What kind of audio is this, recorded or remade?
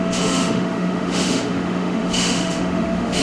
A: remade